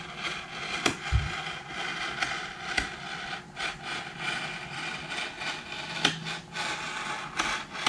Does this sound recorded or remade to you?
recorded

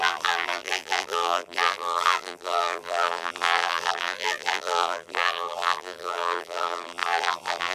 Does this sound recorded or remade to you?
remade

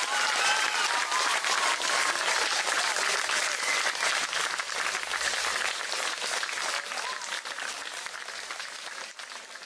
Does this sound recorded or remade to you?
recorded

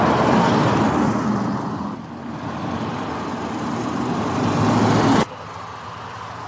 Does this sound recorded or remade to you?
recorded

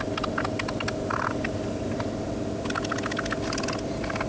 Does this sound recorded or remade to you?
recorded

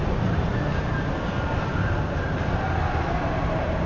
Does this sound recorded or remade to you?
recorded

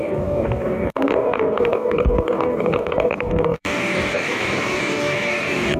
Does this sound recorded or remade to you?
remade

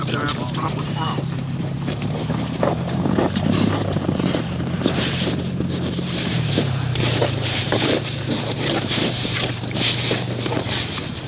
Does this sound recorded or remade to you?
remade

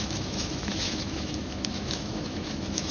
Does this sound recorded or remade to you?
remade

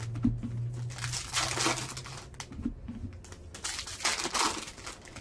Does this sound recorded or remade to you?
recorded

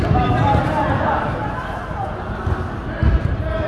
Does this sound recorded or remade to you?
recorded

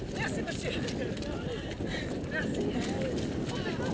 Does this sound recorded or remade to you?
recorded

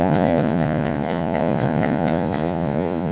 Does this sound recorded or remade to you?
remade